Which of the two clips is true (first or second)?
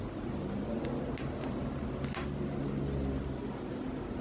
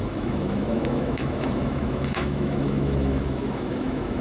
first